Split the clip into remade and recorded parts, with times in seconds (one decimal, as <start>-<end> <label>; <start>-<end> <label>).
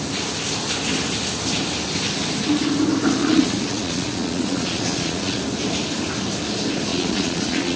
0.0-3.2 recorded; 3.2-5.4 remade; 5.4-6.9 recorded; 6.9-7.8 remade